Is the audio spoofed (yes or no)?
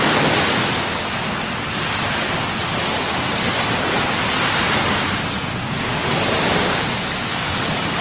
no